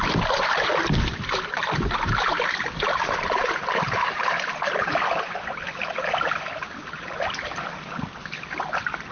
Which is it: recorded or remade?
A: recorded